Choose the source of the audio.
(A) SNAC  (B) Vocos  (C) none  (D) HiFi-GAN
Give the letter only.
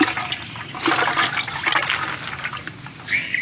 C